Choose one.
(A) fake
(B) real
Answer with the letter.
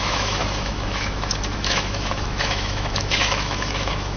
A